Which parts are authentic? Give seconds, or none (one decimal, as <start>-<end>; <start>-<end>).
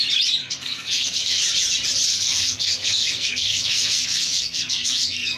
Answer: 0.0-0.4; 1.4-2.1